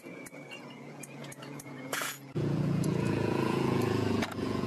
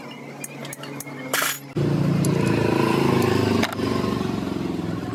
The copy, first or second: first